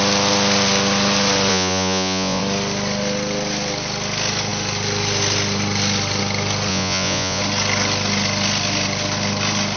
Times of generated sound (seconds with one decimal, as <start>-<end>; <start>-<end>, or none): 1.5-2.4; 6.7-7.4

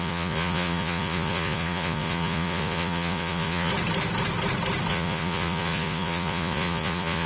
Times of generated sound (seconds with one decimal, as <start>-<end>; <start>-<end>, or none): 0.0-3.7; 4.9-7.3